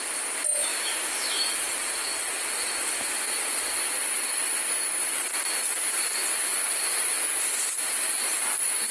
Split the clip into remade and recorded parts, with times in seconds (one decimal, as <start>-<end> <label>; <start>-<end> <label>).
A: 0.0-0.7 recorded; 0.7-1.4 remade; 1.4-8.9 recorded